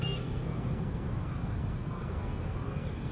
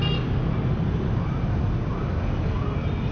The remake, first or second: first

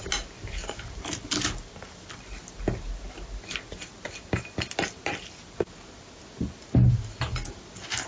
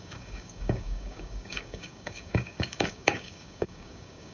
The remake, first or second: second